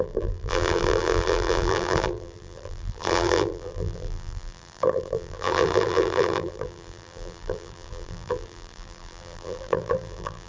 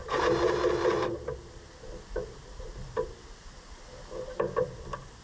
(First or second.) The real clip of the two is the second